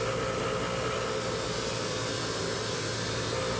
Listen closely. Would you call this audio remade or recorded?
remade